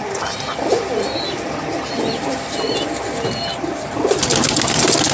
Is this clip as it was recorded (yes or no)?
yes